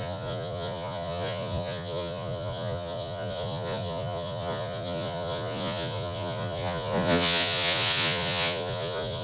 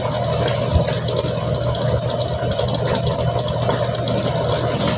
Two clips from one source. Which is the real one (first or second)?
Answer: second